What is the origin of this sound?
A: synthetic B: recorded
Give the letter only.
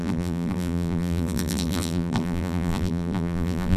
A